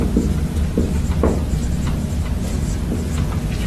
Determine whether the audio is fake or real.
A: real